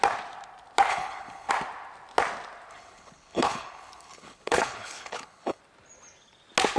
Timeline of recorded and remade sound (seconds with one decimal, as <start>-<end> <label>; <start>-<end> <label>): 0.0-0.9 recorded; 0.9-1.5 remade; 1.5-2.7 recorded; 2.7-5.6 remade; 5.6-6.8 recorded